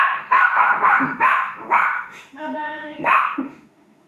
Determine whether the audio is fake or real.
fake